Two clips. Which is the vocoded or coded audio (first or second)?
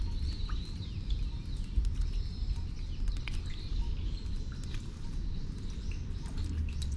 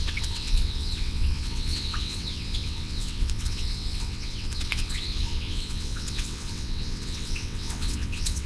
second